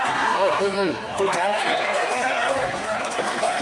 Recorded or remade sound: remade